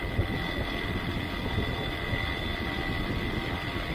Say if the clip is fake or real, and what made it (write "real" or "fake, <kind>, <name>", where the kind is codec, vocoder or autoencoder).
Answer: real